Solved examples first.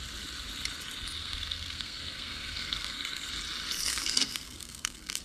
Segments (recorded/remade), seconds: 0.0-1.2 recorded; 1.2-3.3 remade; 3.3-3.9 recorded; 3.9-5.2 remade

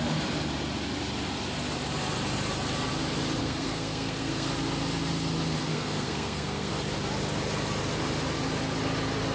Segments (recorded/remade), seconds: 0.0-3.4 recorded; 3.4-4.5 remade; 4.5-5.6 recorded; 5.6-6.7 remade; 6.7-9.3 recorded

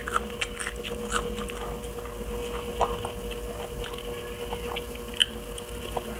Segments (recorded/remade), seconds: 0.0-6.2 recorded

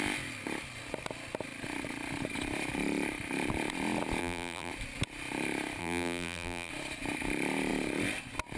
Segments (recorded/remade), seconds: 0.0-4.2 recorded; 4.2-4.7 remade; 4.7-5.8 recorded; 5.8-6.7 remade; 6.7-8.6 recorded

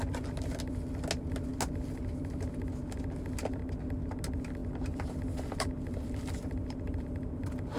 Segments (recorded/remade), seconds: 0.0-4.6 recorded; 4.6-7.8 remade

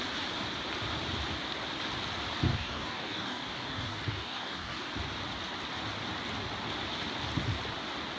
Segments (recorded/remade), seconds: 0.0-2.5 recorded; 2.5-4.9 remade; 4.9-8.2 recorded

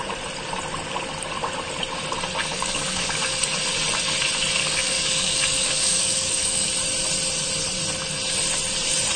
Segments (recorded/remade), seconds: 0.0-2.4 recorded; 2.4-3.4 remade; 3.4-4.6 recorded; 4.6-6.7 remade; 6.7-9.2 recorded